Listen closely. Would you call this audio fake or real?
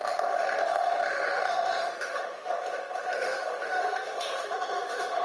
fake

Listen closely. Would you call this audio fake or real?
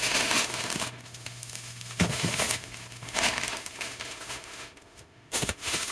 fake